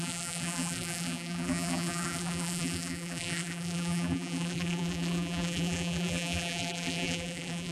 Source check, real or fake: fake